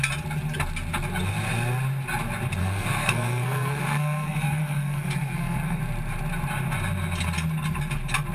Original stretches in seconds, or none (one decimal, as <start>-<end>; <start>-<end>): 0.0-2.6; 5.8-8.3